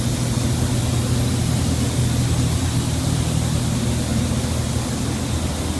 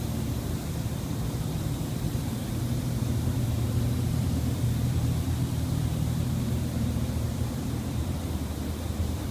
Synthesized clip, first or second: second